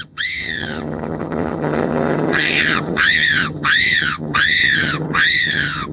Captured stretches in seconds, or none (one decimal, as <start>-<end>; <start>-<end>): none

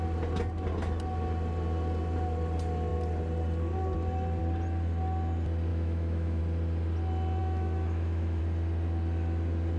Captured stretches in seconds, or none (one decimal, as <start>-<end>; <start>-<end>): 0.0-5.7; 6.4-7.4; 8.4-9.8

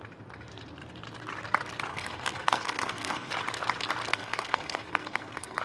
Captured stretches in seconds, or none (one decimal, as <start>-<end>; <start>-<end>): 0.0-1.9; 3.3-4.1